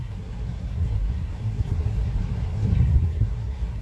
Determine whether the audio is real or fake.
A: fake